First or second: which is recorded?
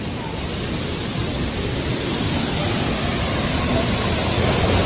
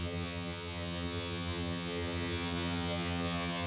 first